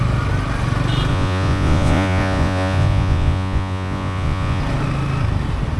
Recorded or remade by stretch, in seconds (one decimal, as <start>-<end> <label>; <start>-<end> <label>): 0.0-1.1 recorded; 1.1-4.6 remade; 4.6-5.8 recorded